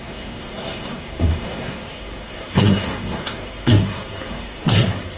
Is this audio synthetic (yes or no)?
yes